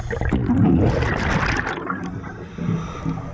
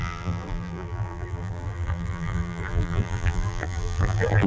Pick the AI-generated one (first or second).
second